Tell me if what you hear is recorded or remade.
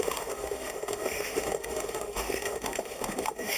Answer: remade